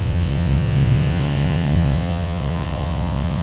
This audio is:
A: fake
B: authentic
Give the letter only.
A